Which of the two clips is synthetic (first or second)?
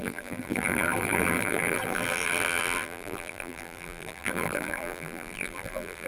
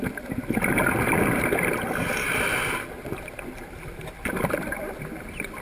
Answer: first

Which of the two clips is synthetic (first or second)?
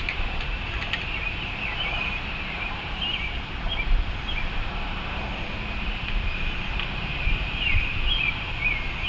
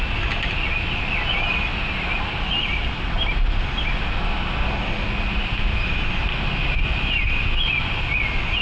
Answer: first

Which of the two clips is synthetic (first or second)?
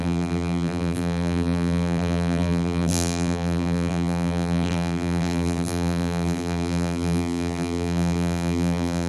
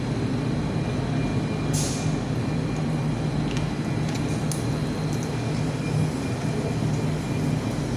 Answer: first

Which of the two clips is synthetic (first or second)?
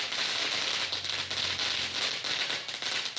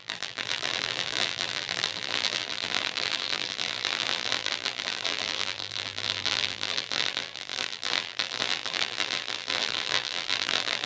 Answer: second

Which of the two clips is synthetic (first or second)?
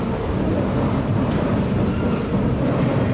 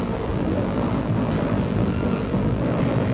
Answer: second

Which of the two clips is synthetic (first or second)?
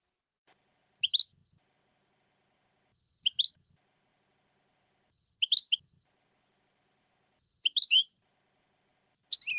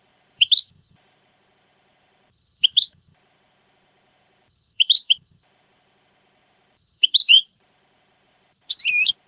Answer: second